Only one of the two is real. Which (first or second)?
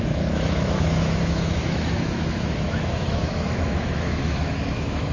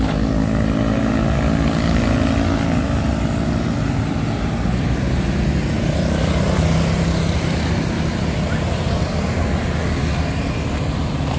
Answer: second